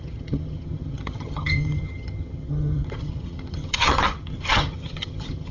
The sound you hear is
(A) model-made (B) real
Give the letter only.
A